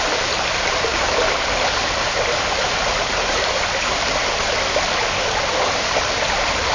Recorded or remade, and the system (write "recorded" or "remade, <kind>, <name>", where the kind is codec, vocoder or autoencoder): remade, vocoder, BigVGAN v2